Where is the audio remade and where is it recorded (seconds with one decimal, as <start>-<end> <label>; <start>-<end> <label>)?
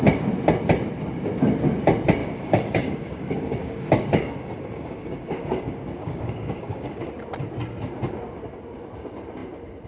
0.0-2.2 recorded; 2.2-7.0 remade; 7.0-9.9 recorded